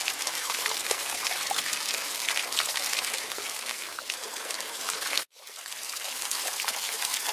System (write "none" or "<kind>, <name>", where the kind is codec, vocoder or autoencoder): codec, SNAC